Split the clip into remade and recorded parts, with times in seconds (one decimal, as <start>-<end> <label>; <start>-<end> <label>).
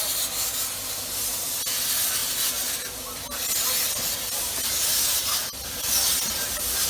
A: 0.0-6.9 recorded